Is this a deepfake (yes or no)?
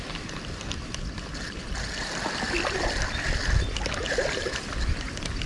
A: no